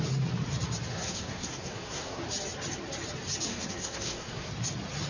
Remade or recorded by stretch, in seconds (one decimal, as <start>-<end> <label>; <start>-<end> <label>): 0.0-0.9 recorded; 0.9-2.2 remade; 2.2-3.5 recorded; 3.5-4.5 remade; 4.5-5.1 recorded